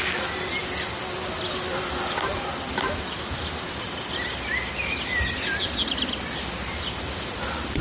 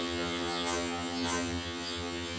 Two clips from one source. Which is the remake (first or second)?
second